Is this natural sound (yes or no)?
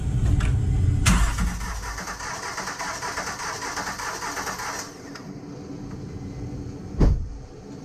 yes